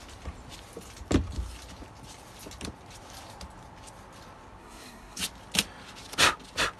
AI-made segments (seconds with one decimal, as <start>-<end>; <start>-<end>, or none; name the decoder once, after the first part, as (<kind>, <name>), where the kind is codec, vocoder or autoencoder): 4.6-5.2 (codec, SNAC)